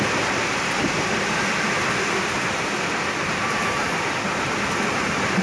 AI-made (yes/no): yes